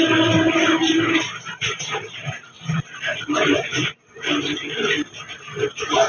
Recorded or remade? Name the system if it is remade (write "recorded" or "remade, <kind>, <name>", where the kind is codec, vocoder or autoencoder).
remade, vocoder, BigVGAN v2